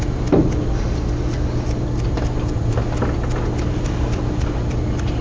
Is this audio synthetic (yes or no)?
no